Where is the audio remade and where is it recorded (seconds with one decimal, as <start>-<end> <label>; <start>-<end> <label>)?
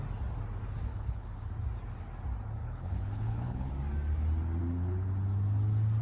0.0-0.9 recorded; 0.9-1.5 remade; 1.5-2.6 recorded; 2.6-3.7 remade; 3.7-4.6 recorded; 4.6-5.1 remade; 5.1-6.0 recorded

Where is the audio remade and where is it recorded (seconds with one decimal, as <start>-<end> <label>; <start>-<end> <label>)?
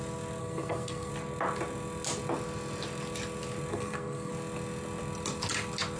0.0-0.4 recorded; 0.4-1.1 remade; 1.1-3.7 recorded; 3.7-4.3 remade; 4.3-6.0 recorded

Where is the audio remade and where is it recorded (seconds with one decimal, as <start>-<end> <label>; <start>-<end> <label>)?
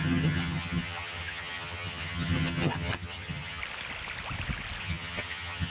0.0-3.6 remade; 3.6-4.8 recorded; 4.8-5.7 remade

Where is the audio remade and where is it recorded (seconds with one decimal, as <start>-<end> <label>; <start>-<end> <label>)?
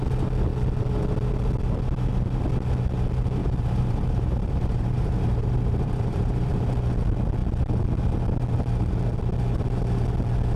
0.0-3.4 recorded; 3.4-6.5 remade; 6.5-10.6 recorded